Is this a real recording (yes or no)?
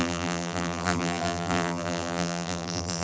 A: no